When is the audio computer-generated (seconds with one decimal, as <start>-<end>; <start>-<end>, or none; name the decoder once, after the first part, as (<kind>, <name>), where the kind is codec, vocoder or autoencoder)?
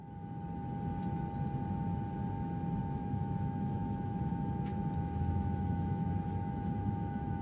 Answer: 2.8-4.3 (autoencoder, DAC-VAE); 4.7-7.4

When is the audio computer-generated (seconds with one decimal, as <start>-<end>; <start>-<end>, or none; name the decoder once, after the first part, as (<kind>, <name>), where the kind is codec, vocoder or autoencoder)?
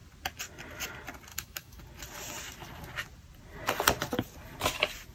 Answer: 1.3-1.8 (autoencoder, DAC-VAE)